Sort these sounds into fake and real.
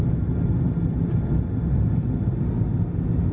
real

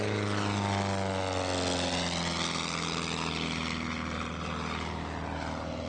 real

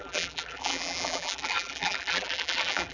fake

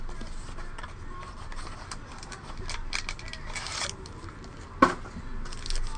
real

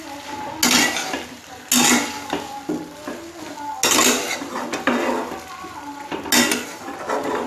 real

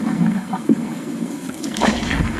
fake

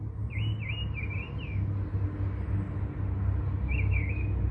real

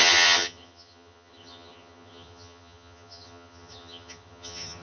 fake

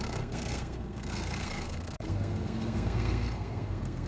fake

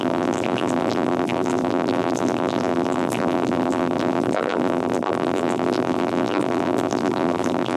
fake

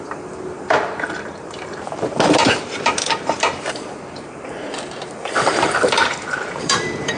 fake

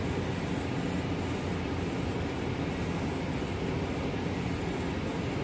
real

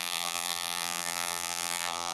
fake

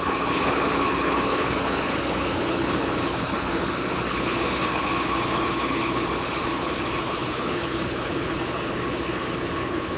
fake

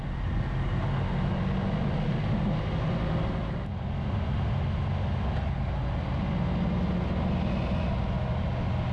real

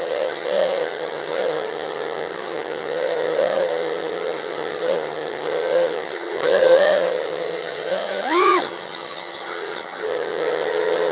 fake